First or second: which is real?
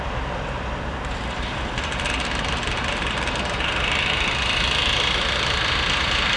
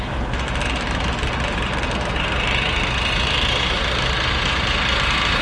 second